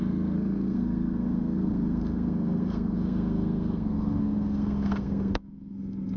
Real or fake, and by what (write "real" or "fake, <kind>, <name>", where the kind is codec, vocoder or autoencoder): fake, codec, SNAC